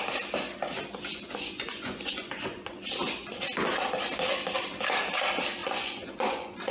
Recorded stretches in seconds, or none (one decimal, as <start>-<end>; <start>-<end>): 0.0-1.1; 3.4-5.6

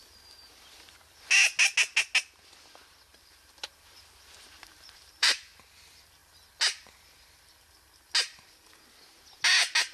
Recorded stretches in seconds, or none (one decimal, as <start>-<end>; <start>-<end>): 0.0-3.1; 5.7-9.9